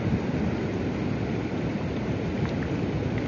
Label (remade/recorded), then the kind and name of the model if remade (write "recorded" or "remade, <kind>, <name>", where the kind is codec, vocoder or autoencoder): recorded